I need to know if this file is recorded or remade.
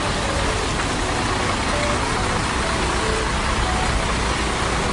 recorded